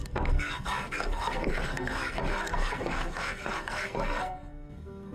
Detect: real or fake fake